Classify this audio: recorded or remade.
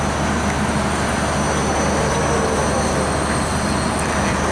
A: recorded